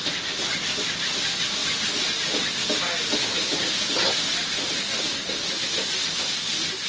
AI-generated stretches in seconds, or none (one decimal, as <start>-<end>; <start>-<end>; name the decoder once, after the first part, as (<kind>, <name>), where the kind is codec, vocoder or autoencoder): none